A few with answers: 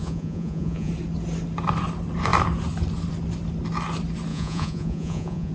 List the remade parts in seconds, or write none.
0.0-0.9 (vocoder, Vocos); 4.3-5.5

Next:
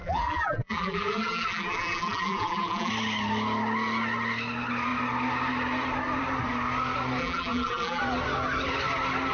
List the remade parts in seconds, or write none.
0.0-2.9 (vocoder, BigVGAN v2); 7.2-8.0

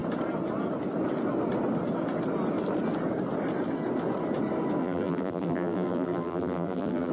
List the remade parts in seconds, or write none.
4.8-7.1 (vocoder, BigVGAN v2)

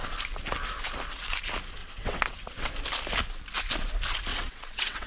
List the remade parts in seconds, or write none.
1.8-2.7 (vocoder, WaveNeXt); 4.3-5.1

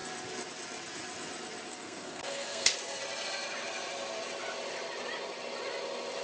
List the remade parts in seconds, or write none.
1.7-2.7 (codec, SNAC)